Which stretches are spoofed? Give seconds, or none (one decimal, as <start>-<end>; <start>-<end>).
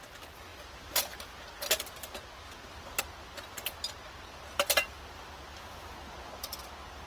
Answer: none